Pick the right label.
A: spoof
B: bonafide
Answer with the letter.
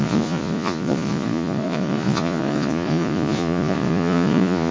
A